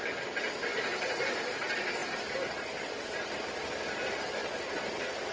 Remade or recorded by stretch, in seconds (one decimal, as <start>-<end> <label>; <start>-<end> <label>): 0.0-5.3 recorded